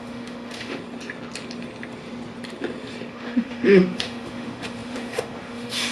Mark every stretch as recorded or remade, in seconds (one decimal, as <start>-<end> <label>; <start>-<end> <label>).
0.0-0.8 remade; 0.8-3.1 recorded; 3.1-5.9 remade